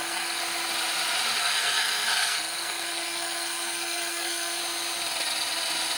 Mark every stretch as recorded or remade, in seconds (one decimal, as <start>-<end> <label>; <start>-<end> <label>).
0.0-0.4 remade; 0.4-1.4 recorded; 1.4-4.6 remade; 4.6-6.0 recorded